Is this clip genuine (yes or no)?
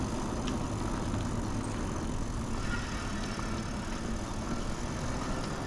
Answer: yes